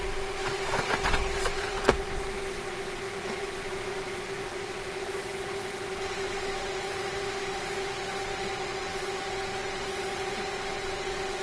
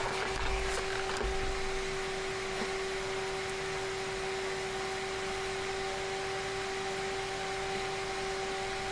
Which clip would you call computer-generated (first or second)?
first